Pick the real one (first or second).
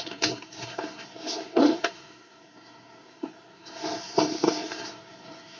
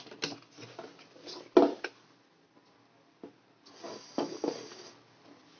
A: second